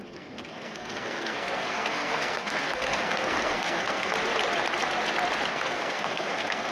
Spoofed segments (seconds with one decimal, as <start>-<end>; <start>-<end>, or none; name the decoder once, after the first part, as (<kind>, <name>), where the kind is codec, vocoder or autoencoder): 0.0-4.1 (codec, SNAC); 5.5-6.7